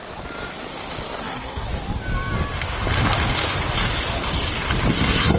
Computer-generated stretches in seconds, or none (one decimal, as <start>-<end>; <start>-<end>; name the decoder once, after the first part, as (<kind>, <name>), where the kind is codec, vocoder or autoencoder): 1.2-1.7 (codec, SNAC); 4.9-5.4

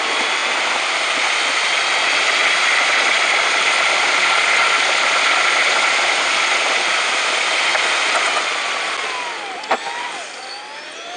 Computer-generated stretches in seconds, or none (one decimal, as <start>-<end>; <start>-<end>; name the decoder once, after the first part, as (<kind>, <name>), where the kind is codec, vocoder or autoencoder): 0.0-2.4 (vocoder, BigVGAN v2); 6.8-7.7; 9.8-11.2

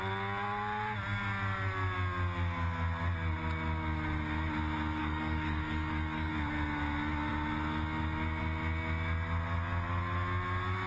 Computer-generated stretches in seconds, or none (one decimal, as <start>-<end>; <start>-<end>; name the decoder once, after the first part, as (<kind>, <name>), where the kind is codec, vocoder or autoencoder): 5.0-6.3 (codec, DAC)